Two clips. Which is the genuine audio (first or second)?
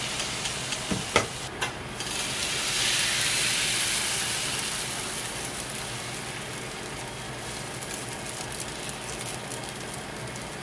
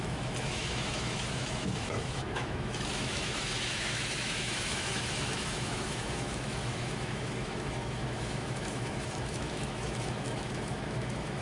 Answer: first